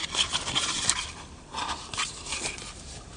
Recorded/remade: remade